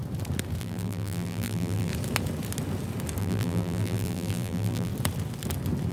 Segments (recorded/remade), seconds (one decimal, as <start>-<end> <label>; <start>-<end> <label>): 0.0-0.6 recorded; 0.6-1.9 remade; 1.9-3.2 recorded; 3.2-4.9 remade; 4.9-5.9 recorded